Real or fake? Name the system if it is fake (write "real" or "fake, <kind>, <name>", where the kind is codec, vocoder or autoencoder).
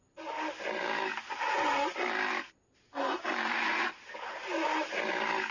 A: real